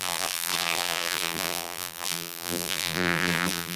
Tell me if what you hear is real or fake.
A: fake